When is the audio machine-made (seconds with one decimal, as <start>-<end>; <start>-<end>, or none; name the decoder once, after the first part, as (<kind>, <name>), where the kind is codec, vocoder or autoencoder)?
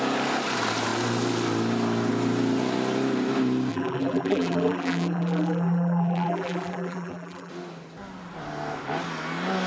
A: 3.7-7.5 (vocoder, BigVGAN v2)